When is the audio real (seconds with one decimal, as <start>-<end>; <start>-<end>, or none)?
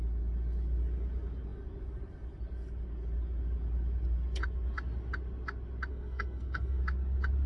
0.0-5.9; 6.8-7.5